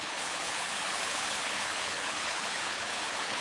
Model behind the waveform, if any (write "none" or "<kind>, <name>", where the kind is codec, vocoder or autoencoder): codec, HILCodec